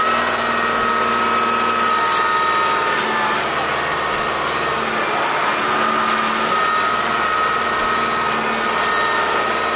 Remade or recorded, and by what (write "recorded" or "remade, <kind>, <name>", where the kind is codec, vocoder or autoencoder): recorded